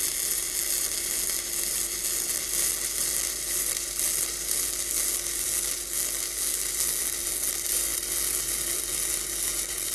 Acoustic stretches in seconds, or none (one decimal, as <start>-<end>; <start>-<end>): 0.0-9.9